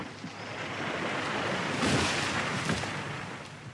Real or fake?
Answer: real